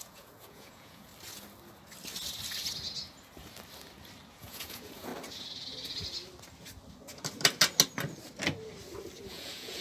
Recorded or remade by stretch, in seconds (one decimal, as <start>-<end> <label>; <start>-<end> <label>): 0.0-1.1 remade; 1.1-4.3 recorded; 4.3-5.1 remade; 5.1-9.3 recorded; 9.3-9.8 remade